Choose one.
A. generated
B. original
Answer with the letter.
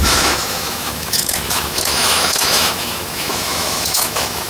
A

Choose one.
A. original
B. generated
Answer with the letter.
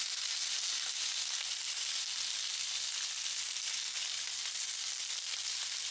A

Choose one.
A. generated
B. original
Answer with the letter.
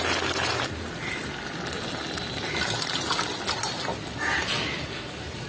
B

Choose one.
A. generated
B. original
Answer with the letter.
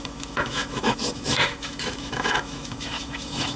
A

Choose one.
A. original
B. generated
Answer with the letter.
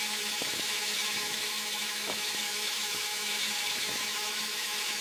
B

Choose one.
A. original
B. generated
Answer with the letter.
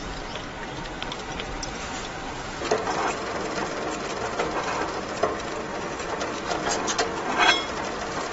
A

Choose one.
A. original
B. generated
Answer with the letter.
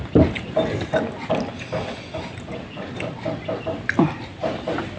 A